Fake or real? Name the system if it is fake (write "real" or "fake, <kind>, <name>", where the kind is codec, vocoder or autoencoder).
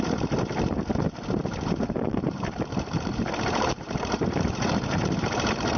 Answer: fake, vocoder, BigVGAN v2